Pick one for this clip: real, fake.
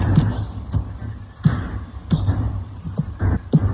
fake